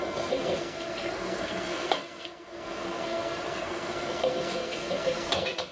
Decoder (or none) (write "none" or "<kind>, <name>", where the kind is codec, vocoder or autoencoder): codec, SNAC